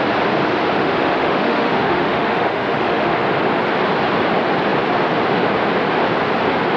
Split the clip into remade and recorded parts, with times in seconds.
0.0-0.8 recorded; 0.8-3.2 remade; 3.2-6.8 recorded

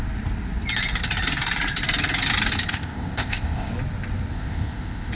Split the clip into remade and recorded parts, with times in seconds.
0.0-2.7 recorded; 2.7-3.7 remade; 3.7-4.3 recorded; 4.3-5.1 remade

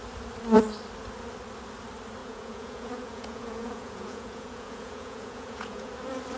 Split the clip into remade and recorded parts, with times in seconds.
0.0-2.2 recorded; 2.2-5.9 remade; 5.9-6.4 recorded

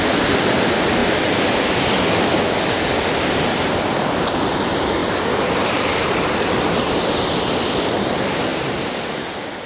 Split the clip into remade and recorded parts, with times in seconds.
0.0-5.0 recorded; 5.0-6.5 remade; 6.5-8.5 recorded; 8.5-9.7 remade

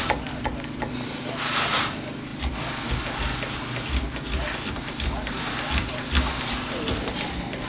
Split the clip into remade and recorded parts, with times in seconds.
0.0-7.7 recorded

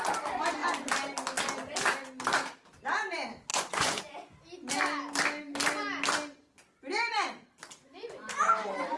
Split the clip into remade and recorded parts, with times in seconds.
0.0-3.5 recorded; 3.5-4.0 remade; 4.0-9.0 recorded